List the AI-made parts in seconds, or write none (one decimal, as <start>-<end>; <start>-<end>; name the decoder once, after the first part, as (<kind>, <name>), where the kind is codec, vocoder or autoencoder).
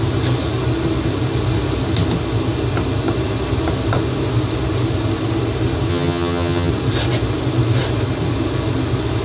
5.9-6.7 (vocoder, HiFi-GAN)